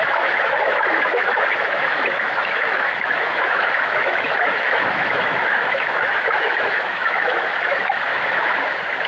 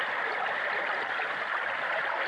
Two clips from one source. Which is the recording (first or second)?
second